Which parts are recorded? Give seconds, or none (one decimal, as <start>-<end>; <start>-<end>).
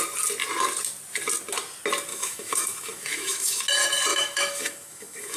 0.0-2.1; 3.6-4.1